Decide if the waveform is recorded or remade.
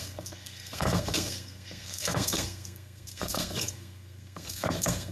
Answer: remade